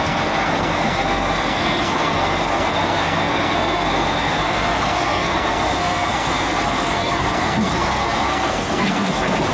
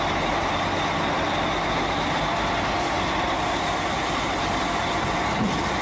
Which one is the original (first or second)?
second